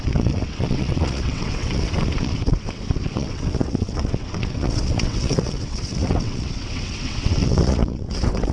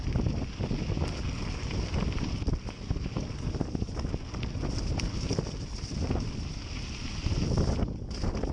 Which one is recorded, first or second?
second